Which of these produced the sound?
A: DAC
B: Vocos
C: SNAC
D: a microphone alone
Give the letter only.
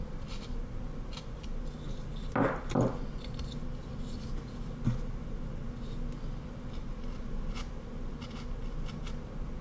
D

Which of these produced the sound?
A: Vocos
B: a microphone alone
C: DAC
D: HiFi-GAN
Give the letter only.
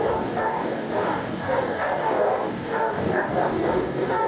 C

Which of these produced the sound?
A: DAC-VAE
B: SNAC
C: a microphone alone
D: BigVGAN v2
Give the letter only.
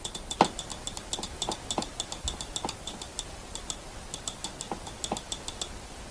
C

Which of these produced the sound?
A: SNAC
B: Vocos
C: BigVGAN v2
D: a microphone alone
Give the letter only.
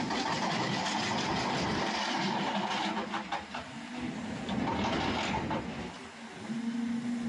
D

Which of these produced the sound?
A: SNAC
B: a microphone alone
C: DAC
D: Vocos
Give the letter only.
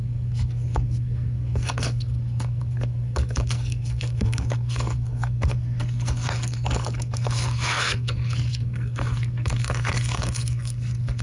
A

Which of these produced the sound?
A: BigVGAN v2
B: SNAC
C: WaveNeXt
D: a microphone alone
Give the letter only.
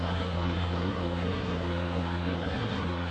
B